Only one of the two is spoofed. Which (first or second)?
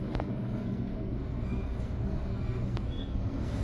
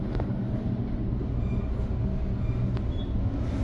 first